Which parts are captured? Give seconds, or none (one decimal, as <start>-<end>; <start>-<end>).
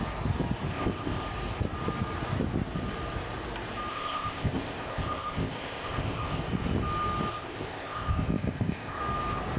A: 0.0-0.7; 1.2-3.9; 6.4-7.3; 9.0-9.6